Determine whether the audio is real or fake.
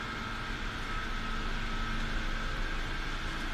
real